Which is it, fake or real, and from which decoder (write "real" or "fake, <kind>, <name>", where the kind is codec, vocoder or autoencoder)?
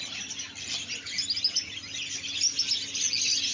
real